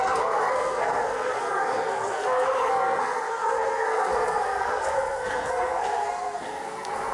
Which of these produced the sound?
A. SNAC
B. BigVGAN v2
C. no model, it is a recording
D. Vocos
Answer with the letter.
A